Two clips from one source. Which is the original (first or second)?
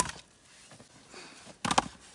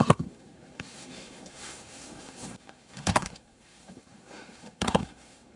first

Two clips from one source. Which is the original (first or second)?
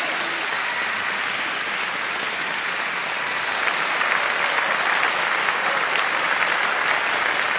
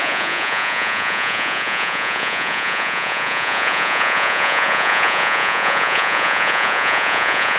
first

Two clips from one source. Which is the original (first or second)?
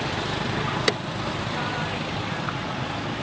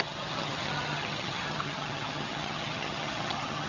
first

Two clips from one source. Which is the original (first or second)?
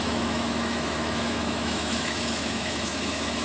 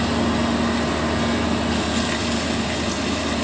second